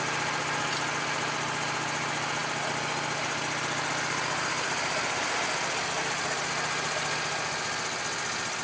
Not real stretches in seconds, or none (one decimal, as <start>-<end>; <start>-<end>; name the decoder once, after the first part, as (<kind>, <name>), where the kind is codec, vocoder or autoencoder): none